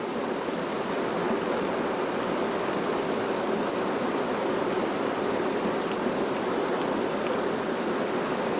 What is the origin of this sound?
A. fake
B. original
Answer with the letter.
B